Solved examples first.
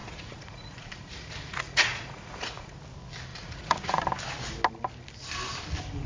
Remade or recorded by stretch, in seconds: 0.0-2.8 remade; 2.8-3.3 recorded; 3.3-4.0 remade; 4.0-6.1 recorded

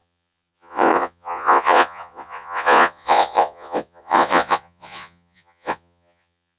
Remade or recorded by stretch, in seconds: 0.0-6.6 remade

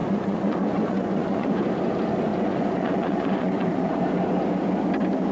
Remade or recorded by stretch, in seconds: 0.0-1.6 remade; 1.6-2.3 recorded; 2.3-4.0 remade; 4.0-5.3 recorded